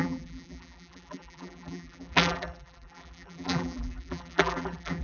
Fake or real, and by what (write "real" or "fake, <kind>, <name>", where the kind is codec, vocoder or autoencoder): fake, vocoder, BigVGAN v2